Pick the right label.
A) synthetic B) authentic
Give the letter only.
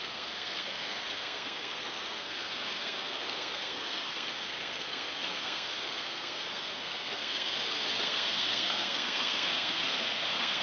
A